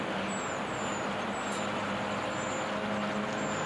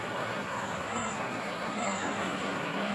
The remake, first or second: second